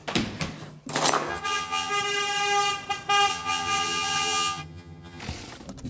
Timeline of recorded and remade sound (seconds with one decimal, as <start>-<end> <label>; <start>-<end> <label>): 0.0-1.3 recorded; 1.3-1.9 remade; 1.9-3.3 recorded; 3.3-5.2 remade; 5.2-5.9 recorded